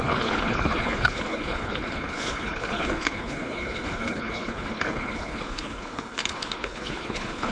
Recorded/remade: remade